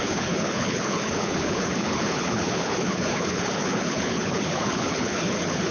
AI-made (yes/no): yes